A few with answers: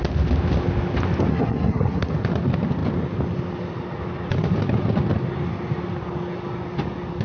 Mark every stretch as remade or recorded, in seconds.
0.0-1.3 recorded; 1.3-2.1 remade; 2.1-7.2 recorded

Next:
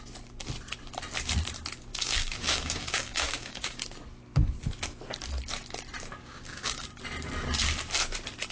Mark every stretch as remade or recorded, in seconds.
0.0-1.9 recorded; 1.9-3.8 remade; 3.8-6.2 recorded; 6.2-6.8 remade; 6.8-8.5 recorded

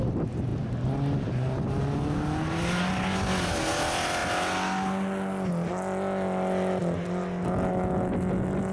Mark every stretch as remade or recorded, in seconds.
0.0-8.7 recorded

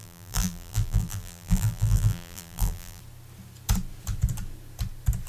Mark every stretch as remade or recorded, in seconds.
0.0-3.0 remade; 3.0-5.3 recorded